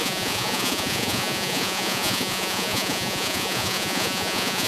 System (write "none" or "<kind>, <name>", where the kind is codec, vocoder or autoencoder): vocoder, Vocos